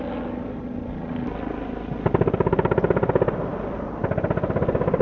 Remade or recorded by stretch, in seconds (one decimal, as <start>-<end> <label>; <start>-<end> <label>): 0.0-5.0 recorded

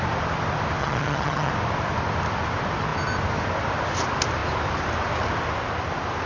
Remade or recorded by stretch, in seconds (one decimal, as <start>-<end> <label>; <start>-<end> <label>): 0.0-0.8 recorded; 0.8-1.5 remade; 1.5-6.3 recorded

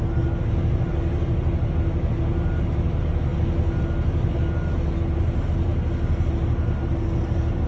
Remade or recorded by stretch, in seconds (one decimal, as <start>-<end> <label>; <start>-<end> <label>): 0.0-7.7 recorded